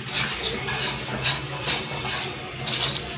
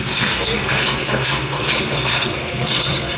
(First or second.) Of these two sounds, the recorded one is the first